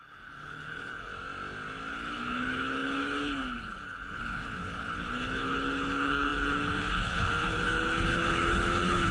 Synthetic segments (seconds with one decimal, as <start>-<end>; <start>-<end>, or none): 0.0-1.1; 1.9-9.1